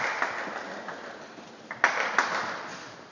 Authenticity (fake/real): real